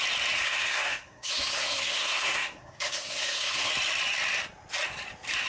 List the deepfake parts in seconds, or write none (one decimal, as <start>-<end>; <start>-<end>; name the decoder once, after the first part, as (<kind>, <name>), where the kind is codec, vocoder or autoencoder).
0.4-3.7 (codec, SNAC)

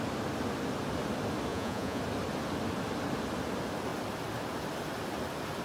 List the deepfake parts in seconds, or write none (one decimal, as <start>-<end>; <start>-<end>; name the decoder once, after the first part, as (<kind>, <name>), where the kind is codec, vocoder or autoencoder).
1.5-2.0 (vocoder, Vocos)

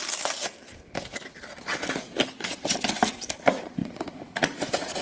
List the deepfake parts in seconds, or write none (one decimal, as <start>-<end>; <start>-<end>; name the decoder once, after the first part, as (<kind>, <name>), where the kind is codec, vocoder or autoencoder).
3.8-5.0 (vocoder, Vocos)